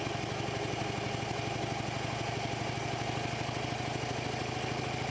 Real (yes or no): yes